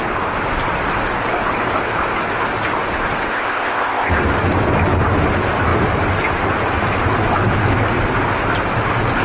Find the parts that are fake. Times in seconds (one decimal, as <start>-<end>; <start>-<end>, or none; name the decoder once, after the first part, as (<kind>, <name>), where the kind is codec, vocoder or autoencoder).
3.3-4.1 (codec, ZipCodec)